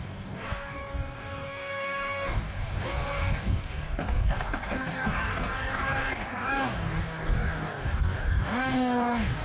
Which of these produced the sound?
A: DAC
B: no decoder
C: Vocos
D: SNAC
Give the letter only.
A